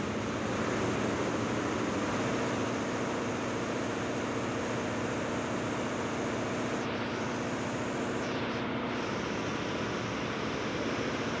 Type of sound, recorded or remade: recorded